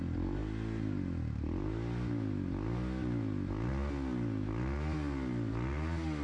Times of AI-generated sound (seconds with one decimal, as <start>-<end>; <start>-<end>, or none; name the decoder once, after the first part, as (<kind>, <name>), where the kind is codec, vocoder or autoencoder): none